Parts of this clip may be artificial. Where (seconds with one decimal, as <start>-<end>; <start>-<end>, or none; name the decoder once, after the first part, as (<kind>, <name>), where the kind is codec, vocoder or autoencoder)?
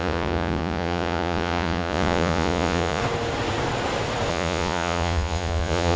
0.0-3.0 (vocoder, Vocos); 4.3-6.0